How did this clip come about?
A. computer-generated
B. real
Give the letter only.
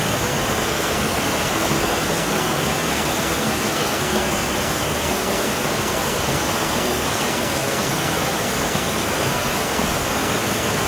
A